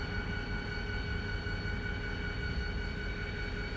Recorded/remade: recorded